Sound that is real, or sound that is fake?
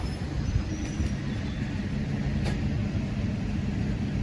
real